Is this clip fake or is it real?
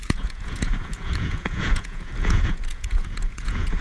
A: fake